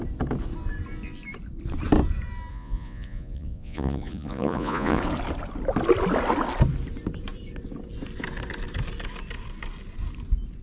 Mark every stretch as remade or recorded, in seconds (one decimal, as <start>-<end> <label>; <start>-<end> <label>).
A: 0.0-2.5 recorded; 2.5-5.0 remade; 5.0-10.6 recorded